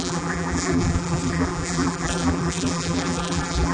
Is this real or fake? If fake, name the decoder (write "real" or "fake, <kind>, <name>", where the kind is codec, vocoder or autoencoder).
fake, vocoder, BigVGAN v2